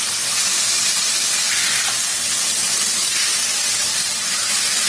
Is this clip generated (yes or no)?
no